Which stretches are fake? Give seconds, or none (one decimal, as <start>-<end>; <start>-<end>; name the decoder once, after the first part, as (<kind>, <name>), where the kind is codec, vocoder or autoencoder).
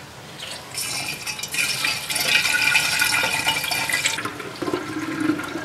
4.3-4.8 (vocoder, BigVGAN v2)